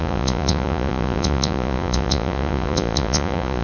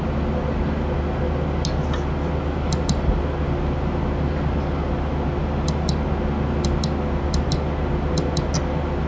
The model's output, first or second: first